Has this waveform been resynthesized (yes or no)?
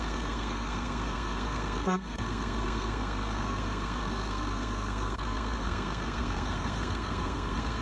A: yes